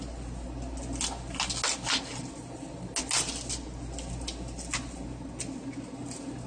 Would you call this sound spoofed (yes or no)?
no